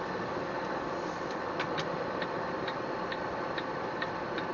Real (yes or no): yes